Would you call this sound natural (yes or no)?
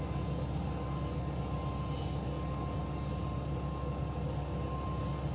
yes